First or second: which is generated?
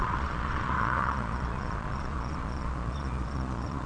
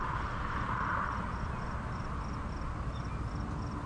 first